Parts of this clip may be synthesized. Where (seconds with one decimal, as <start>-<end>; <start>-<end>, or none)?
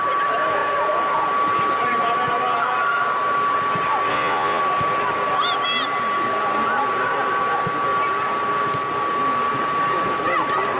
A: 4.1-4.6